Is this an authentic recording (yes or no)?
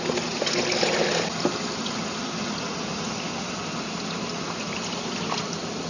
yes